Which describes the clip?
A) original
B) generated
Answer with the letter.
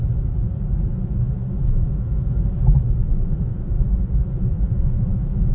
A